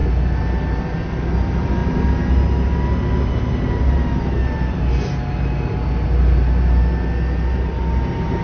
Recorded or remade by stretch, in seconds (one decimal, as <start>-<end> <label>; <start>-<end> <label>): 0.0-8.4 recorded